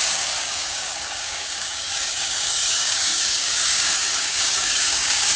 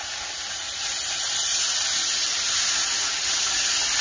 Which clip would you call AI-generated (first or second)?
first